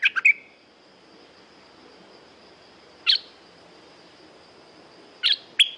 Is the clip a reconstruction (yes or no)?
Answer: no